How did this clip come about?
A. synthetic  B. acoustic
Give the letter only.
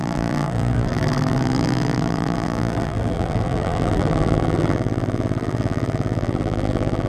A